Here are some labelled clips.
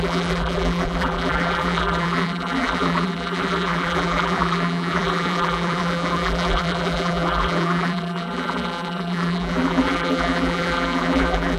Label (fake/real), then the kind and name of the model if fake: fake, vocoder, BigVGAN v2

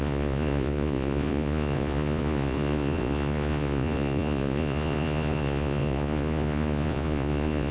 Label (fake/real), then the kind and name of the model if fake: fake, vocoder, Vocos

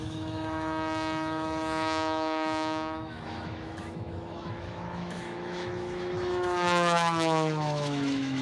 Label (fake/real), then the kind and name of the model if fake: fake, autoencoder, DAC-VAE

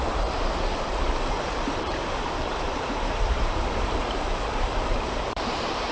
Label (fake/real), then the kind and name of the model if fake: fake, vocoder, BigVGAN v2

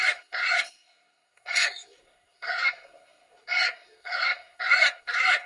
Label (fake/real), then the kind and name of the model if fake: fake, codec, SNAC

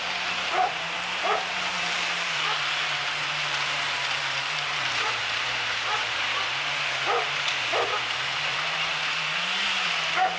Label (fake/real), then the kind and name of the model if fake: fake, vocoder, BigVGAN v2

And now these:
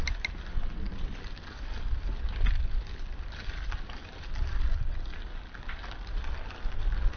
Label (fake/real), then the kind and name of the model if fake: fake, vocoder, BigVGAN v2